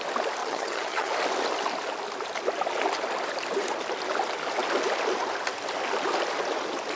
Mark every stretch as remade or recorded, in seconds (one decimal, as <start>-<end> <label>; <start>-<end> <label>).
0.0-0.4 recorded; 0.4-1.1 remade; 1.1-7.0 recorded